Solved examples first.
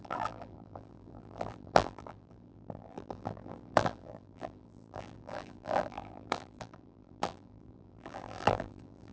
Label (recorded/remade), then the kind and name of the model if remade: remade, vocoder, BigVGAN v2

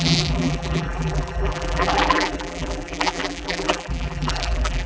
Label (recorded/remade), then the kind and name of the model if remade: remade, vocoder, BigVGAN v2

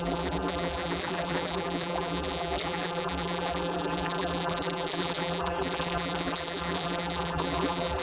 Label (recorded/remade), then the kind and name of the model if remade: remade, vocoder, BigVGAN v2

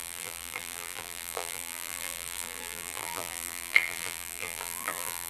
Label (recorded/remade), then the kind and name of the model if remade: remade, vocoder, BigVGAN v2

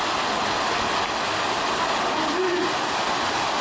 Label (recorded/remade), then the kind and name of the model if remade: recorded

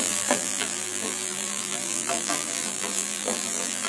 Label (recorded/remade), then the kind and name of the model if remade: remade, vocoder, BigVGAN v2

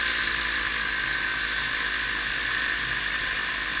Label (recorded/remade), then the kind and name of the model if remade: recorded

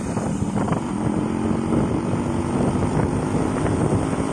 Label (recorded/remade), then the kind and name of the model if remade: recorded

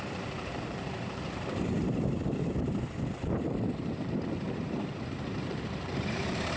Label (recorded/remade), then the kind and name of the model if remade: remade, vocoder, BigVGAN v2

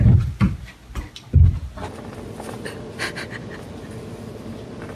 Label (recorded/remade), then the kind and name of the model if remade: recorded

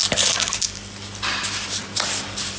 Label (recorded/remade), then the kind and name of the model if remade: recorded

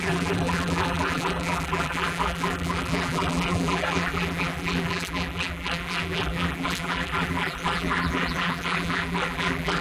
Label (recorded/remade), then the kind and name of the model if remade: remade, vocoder, BigVGAN v2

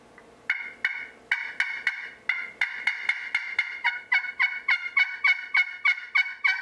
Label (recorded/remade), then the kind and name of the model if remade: recorded